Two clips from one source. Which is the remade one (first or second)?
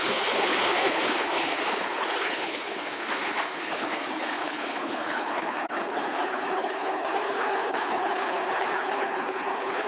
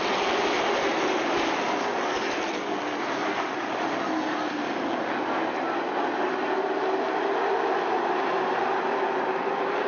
first